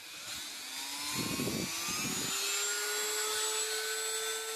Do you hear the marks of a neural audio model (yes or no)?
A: no